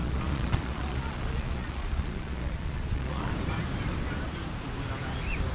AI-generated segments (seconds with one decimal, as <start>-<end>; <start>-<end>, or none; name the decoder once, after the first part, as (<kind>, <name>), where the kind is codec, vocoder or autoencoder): 0.0-3.3 (vocoder, Vocos)